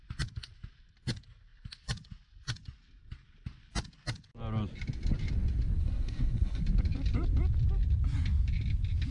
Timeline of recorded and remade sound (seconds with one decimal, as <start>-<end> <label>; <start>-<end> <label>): 0.0-5.8 recorded; 5.8-6.6 remade; 6.6-9.1 recorded